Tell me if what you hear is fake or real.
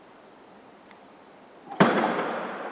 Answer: fake